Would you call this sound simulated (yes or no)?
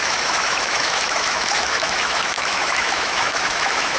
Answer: yes